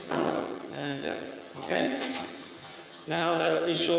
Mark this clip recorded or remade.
remade